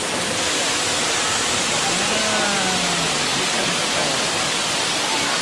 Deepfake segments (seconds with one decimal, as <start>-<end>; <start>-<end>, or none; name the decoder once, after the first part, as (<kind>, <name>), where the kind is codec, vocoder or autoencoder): none